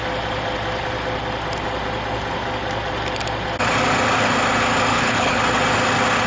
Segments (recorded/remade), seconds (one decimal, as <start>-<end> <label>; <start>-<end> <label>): 0.0-4.9 recorded; 4.9-5.4 remade; 5.4-6.3 recorded